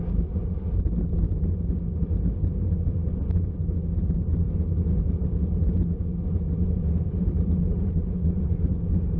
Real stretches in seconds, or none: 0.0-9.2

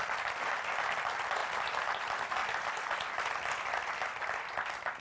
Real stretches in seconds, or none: 0.0-5.0

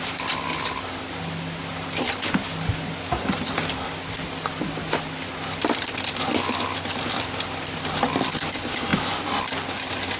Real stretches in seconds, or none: 0.0-10.2

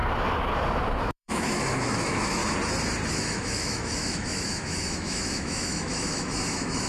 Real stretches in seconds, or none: 0.0-1.0; 2.4-3.1

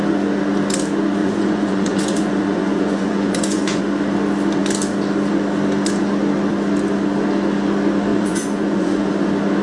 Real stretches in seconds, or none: 0.0-1.2; 3.8-8.1; 9.1-9.6

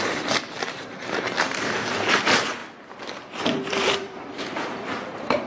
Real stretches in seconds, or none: 2.6-3.7